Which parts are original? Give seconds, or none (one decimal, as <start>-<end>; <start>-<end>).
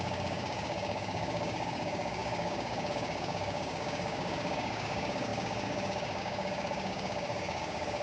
none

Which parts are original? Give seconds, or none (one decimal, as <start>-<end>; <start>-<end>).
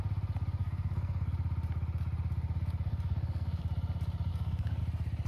0.0-0.6; 1.3-2.9; 3.6-4.3; 4.8-5.3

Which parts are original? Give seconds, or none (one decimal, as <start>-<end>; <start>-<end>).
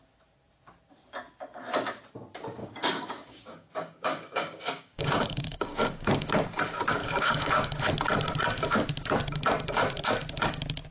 0.0-2.6; 6.3-7.0; 7.9-10.9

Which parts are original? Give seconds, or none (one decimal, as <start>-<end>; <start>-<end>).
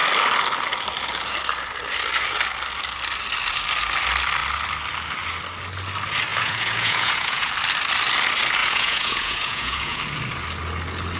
0.0-6.3; 7.5-8.6; 10.0-11.2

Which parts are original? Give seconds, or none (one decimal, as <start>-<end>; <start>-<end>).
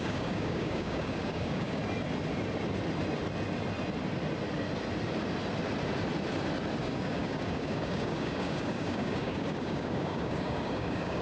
1.8-6.8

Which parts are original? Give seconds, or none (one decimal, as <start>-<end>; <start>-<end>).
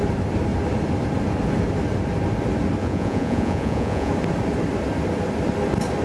0.0-2.8; 4.1-6.0